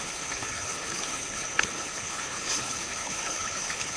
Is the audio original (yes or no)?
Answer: no